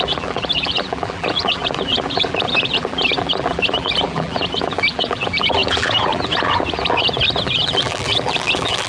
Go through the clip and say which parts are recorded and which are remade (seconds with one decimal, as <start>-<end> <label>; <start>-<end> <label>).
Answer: 0.0-8.9 remade